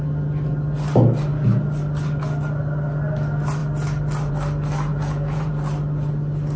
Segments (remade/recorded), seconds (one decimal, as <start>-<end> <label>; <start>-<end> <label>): 0.0-4.9 recorded; 4.9-5.5 remade; 5.5-6.6 recorded